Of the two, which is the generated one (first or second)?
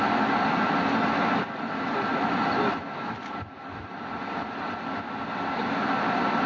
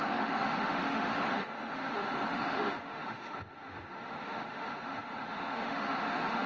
second